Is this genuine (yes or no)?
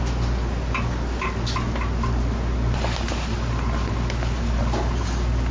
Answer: yes